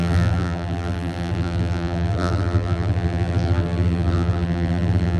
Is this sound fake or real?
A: fake